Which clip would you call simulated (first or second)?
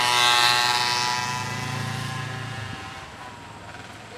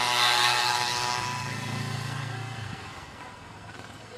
second